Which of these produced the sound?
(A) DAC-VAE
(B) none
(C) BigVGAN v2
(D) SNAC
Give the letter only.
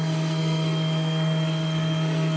D